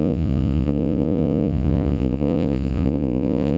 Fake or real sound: fake